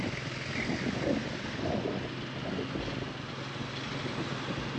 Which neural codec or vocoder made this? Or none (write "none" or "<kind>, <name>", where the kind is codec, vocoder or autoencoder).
none